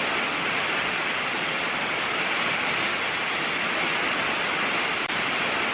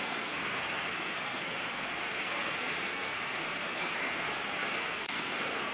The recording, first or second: first